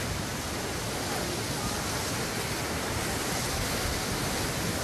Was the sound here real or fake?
real